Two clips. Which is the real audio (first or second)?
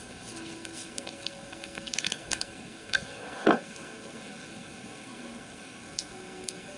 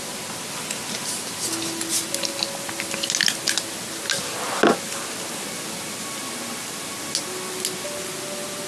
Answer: second